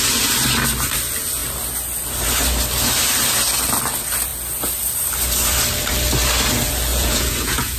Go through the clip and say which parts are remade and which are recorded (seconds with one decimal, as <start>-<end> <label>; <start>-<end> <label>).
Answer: 0.0-6.9 recorded; 6.9-7.8 remade